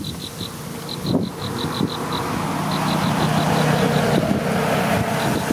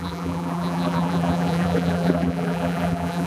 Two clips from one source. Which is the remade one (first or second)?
second